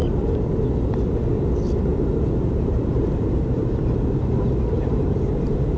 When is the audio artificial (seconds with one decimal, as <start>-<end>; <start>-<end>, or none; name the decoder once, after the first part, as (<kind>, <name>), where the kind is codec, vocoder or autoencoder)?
1.9-5.8 (vocoder, BigVGAN v2)